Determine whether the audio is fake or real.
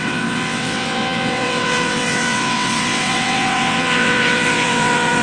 fake